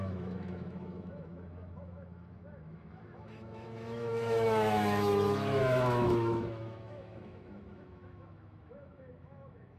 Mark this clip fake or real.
fake